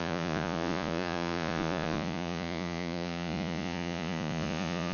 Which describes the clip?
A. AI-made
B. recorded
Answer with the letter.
A